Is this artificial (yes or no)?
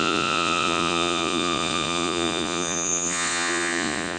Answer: yes